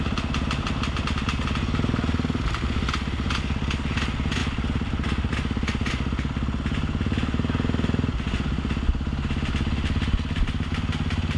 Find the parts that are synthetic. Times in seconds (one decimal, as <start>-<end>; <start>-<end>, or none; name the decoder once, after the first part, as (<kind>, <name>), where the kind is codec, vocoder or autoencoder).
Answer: none